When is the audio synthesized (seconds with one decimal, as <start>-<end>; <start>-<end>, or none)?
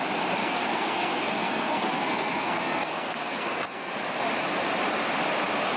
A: 0.4-3.9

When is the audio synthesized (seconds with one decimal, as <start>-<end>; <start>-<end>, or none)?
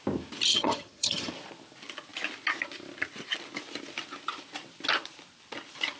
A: 0.5-1.3